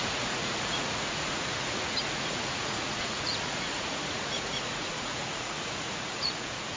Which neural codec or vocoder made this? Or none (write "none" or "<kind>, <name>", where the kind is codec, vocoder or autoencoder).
vocoder, Vocos